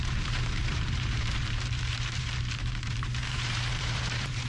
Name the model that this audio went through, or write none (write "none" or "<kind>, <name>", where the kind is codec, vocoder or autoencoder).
vocoder, BigVGAN v2